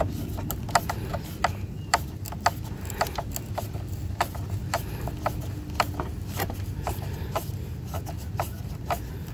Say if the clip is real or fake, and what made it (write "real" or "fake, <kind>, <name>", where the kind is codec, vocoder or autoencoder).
real